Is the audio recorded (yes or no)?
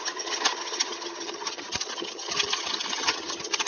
no